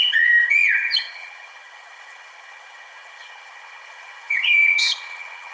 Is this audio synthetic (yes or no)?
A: yes